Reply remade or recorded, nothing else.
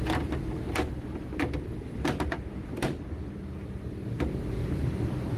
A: recorded